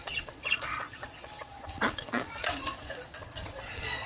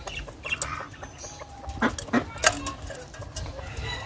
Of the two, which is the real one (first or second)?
second